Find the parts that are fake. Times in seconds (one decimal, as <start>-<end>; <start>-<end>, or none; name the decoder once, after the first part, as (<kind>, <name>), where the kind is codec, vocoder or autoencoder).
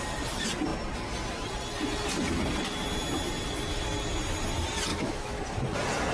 4.9-5.4 (autoencoder, DAC-VAE)